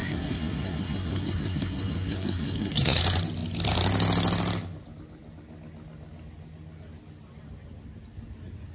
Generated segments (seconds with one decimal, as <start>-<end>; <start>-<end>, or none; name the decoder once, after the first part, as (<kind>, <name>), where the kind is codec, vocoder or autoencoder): 0.0-3.0 (codec, SNAC)